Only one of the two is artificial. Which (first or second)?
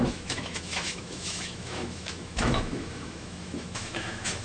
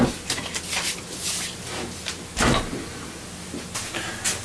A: first